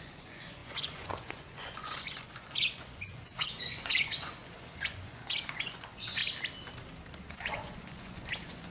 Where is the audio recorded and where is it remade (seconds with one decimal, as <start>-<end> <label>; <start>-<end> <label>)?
0.0-6.2 remade; 6.2-7.3 recorded; 7.3-8.7 remade